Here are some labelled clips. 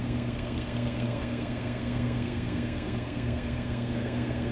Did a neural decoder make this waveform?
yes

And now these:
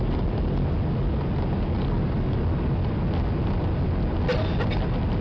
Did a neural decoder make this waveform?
no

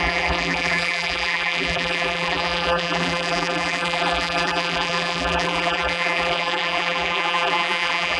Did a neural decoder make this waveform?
yes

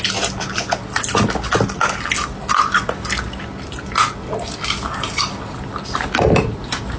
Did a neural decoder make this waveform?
no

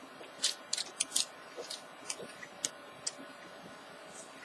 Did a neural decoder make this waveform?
no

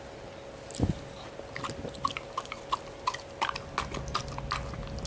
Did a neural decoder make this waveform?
no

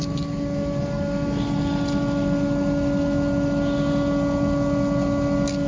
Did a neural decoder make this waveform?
no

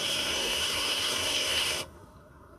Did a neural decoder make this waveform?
yes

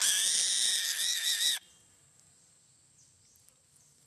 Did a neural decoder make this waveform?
no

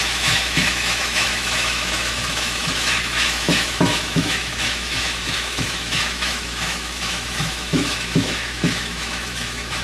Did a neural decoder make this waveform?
yes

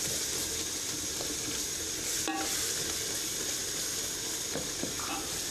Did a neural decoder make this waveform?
no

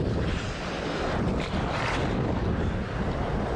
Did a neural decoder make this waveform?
no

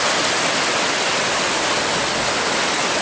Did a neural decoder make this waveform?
no